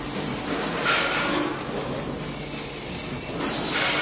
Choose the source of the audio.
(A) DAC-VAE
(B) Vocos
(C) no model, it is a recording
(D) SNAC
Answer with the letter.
C